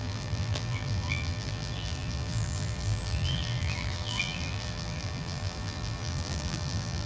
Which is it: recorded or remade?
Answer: remade